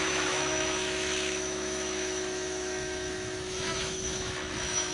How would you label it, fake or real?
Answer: fake